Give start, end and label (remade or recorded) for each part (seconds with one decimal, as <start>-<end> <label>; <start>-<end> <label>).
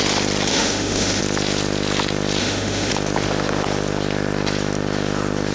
0.0-0.5 recorded; 0.5-1.2 remade; 1.2-2.4 recorded; 2.4-2.9 remade; 2.9-5.5 recorded